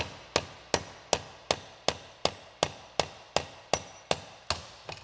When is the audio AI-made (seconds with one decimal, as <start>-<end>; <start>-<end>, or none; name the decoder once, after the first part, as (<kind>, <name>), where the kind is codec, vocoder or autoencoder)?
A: none